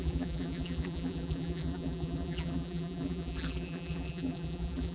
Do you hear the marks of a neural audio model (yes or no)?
yes